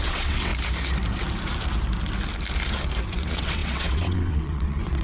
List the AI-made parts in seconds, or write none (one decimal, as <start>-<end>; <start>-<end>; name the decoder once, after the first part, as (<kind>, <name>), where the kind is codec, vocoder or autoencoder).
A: 0.0-0.5 (vocoder, WaveNeXt); 3.1-5.0